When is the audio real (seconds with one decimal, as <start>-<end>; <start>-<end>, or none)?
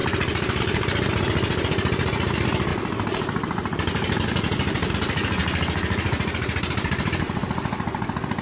0.6-2.7; 4.9-5.4; 7.4-8.4